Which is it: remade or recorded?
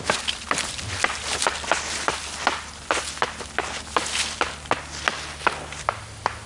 recorded